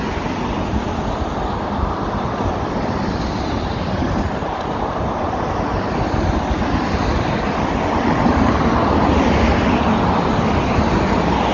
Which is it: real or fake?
real